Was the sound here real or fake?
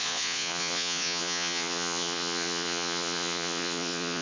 fake